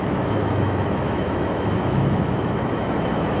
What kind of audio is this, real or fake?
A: fake